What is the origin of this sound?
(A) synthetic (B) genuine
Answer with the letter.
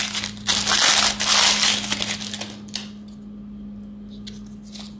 B